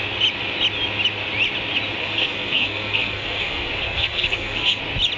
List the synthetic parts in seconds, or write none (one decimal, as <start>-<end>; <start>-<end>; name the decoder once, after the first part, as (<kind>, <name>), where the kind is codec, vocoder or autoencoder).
2.0-4.8 (codec, SNAC)